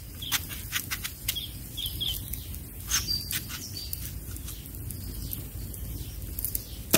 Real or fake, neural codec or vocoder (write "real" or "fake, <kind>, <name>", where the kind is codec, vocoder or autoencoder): real